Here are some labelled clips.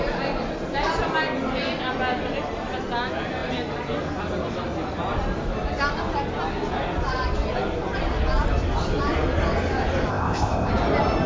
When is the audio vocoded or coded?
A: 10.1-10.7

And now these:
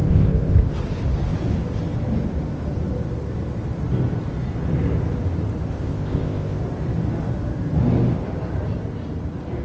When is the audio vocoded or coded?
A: 0.0-0.7; 5.7-6.6

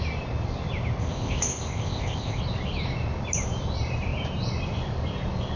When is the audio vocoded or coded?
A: 1.0-2.4

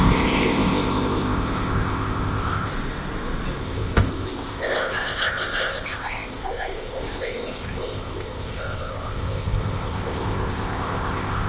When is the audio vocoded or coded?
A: 0.0-2.7; 3.6-11.5

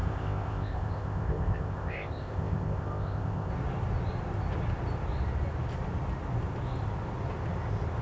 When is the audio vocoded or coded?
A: 0.0-3.5